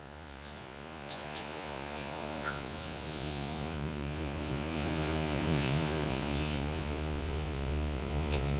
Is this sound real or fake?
fake